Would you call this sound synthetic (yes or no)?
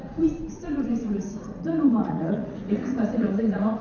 yes